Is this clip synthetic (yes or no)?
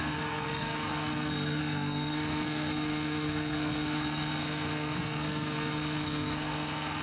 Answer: yes